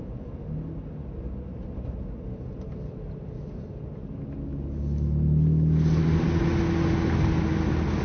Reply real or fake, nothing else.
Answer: real